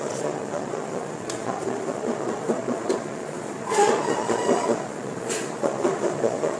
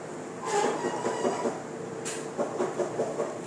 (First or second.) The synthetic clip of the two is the first